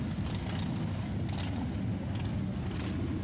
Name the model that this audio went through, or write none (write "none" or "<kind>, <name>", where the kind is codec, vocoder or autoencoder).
none